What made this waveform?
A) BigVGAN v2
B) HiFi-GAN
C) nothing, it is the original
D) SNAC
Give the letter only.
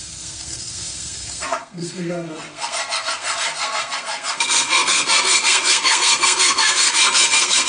D